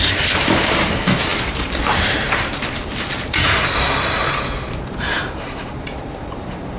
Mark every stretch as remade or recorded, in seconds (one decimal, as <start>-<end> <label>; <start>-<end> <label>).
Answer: 0.0-6.8 remade